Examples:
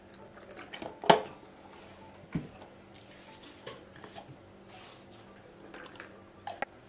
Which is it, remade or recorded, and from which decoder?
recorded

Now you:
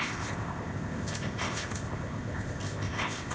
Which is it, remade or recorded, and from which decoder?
remade, codec, ZipCodec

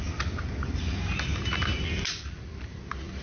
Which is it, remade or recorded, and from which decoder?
recorded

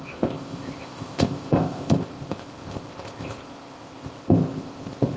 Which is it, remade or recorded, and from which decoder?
remade, codec, ZipCodec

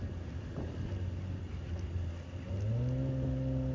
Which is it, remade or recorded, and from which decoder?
recorded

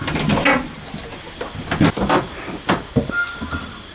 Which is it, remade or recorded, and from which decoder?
recorded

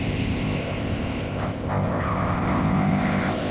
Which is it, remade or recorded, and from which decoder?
remade, codec, ZipCodec